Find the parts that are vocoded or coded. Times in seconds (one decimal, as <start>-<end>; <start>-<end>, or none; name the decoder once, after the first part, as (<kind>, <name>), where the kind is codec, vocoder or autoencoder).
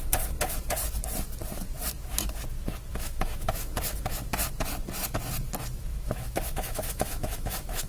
2.9-3.7 (autoencoder, DAC-VAE); 5.9-7.9